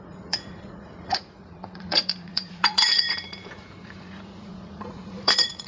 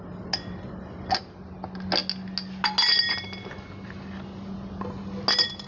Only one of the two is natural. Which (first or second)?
second